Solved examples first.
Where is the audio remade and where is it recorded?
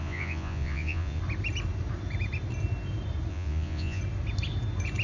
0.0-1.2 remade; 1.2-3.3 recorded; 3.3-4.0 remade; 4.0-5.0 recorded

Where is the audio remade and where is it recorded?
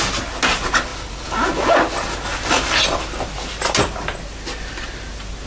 0.0-5.5 recorded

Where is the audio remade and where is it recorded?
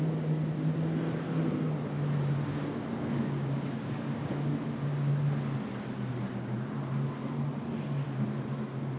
0.0-2.5 recorded; 2.5-4.5 remade; 4.5-9.0 recorded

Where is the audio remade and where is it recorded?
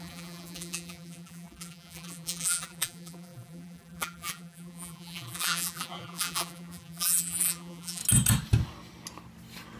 0.0-8.0 remade; 8.0-9.8 recorded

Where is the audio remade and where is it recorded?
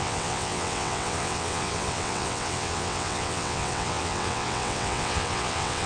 0.0-5.9 remade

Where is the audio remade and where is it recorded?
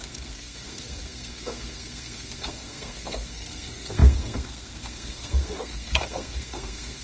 0.0-7.0 remade